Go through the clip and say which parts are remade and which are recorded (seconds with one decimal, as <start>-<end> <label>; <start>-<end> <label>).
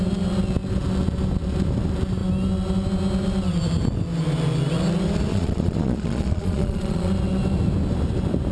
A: 0.0-5.3 recorded; 5.3-7.1 remade; 7.1-8.5 recorded